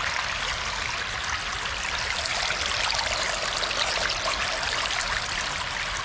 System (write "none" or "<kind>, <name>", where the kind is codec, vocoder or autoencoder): none